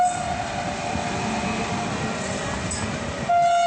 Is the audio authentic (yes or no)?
yes